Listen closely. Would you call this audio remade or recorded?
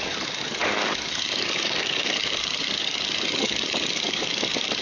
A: remade